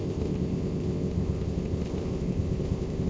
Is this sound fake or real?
fake